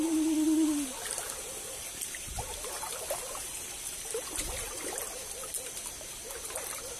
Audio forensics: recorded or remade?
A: recorded